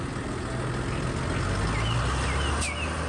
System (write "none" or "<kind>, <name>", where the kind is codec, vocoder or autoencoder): none